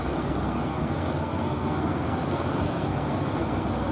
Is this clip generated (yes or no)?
yes